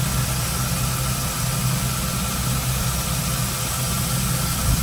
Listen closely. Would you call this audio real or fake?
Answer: real